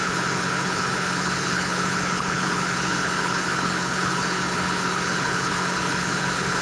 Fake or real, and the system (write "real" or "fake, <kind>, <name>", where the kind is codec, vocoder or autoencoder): fake, codec, HILCodec